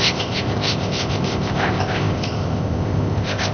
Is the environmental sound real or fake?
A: fake